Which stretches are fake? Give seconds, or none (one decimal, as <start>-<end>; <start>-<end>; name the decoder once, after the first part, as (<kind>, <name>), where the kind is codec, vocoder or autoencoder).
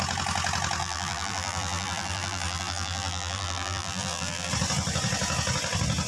0.8-4.5 (vocoder, BigVGAN v2)